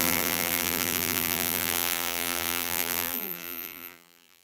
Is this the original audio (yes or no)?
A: no